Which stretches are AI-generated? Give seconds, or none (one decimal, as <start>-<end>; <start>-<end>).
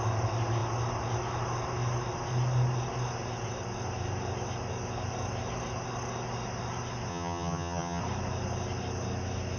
7.1-8.0